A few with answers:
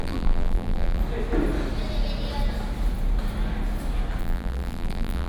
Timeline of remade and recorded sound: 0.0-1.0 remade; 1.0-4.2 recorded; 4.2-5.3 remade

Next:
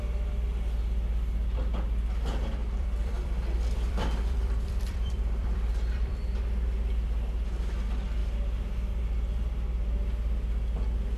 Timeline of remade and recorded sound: 0.0-2.6 recorded; 2.6-6.1 remade; 6.1-11.2 recorded

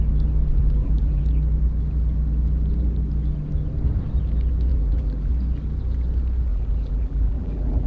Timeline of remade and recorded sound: 0.0-0.5 recorded; 0.5-1.2 remade; 1.2-4.7 recorded; 4.7-5.3 remade; 5.3-6.5 recorded; 6.5-7.9 remade

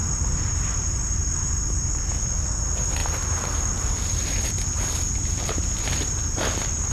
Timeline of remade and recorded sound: 0.0-2.1 remade; 2.1-3.0 recorded; 3.0-4.5 remade; 4.5-6.9 recorded

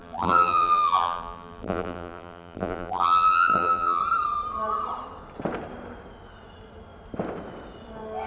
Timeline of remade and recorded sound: 0.0-4.0 remade; 4.0-8.3 recorded

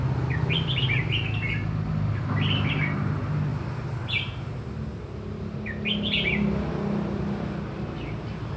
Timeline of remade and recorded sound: 0.0-8.6 recorded

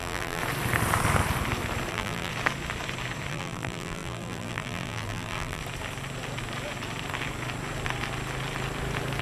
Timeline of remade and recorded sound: 0.0-0.4 remade; 0.4-1.9 recorded; 1.9-2.3 remade; 2.3-3.3 recorded; 3.3-5.6 remade; 5.6-9.2 recorded